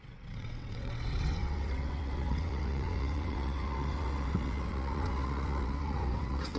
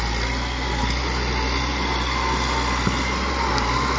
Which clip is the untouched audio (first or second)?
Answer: second